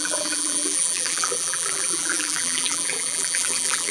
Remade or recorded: remade